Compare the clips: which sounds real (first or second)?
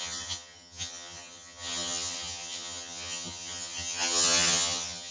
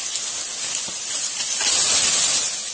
second